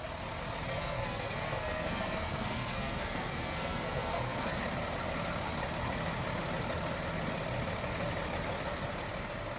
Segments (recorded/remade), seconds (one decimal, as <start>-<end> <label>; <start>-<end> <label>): 0.0-0.7 recorded; 0.7-4.6 remade; 4.6-9.6 recorded